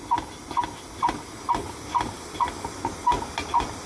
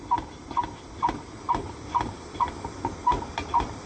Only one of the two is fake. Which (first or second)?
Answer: second